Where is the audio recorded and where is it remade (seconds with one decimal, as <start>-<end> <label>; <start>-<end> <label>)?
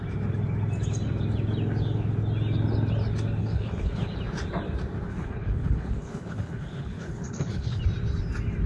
0.0-3.4 recorded; 3.4-4.1 remade; 4.1-5.1 recorded; 5.1-7.8 remade; 7.8-8.7 recorded